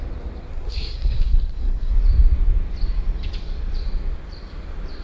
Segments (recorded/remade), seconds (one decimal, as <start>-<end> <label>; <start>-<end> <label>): 0.0-0.5 recorded; 0.5-2.0 remade; 2.0-5.0 recorded